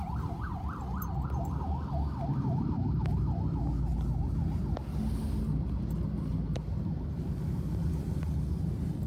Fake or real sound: real